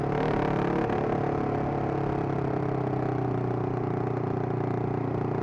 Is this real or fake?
real